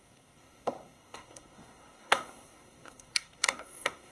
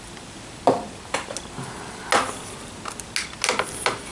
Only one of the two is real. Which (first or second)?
second